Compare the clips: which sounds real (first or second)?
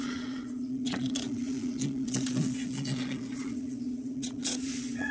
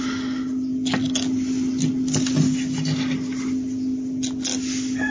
second